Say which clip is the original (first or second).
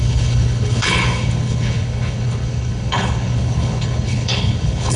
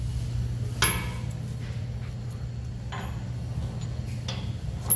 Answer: second